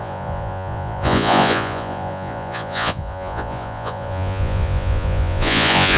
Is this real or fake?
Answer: fake